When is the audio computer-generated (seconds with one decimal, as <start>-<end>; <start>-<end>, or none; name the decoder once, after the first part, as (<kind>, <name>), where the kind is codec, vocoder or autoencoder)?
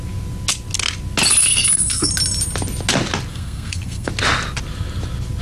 1.4-2.1 (codec, SNAC); 3.3-4.1